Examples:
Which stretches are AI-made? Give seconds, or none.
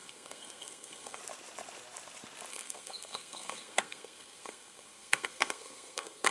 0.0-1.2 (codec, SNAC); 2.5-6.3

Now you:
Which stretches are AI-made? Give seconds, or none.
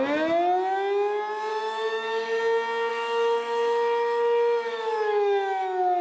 1.5-2.4 (autoencoder, DAC-VAE); 2.9-6.0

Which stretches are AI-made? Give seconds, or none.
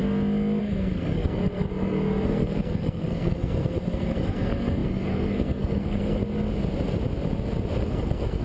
0.6-6.2 (codec, SNAC); 7.8-8.4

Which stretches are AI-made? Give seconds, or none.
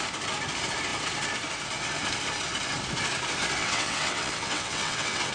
3.6-5.3 (vocoder, WaveNeXt)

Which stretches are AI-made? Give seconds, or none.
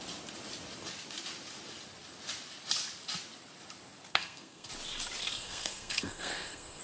4.1-4.7 (codec, SNAC); 5.2-6.8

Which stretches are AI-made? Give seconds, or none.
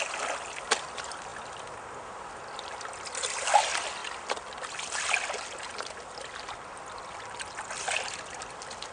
none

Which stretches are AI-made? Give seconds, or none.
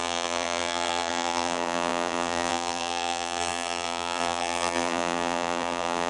0.0-6.1 (vocoder, BigVGAN v2)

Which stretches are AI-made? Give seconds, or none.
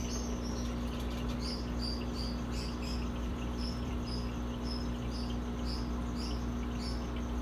3.3-3.9 (vocoder, BigVGAN v2)